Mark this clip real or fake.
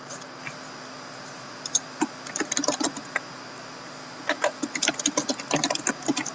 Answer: real